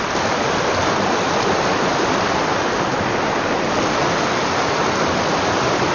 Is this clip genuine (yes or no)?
yes